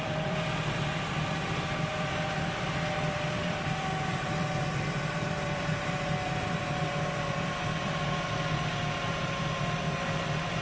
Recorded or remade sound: remade